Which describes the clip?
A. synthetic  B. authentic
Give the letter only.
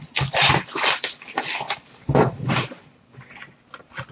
A